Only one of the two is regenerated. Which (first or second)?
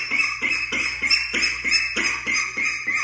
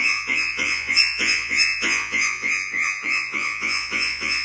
second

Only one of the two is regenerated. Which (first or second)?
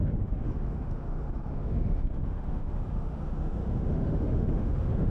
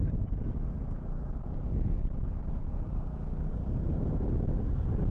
first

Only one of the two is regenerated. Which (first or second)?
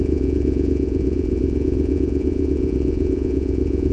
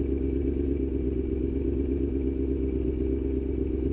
first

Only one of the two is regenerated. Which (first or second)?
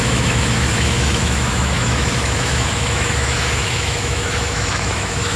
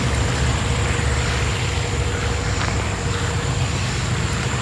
first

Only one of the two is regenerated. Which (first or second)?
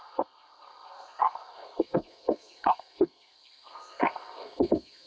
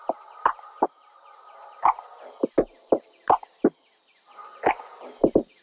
first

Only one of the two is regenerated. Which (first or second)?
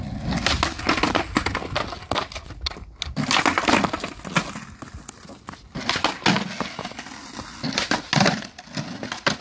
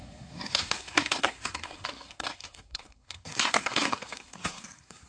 second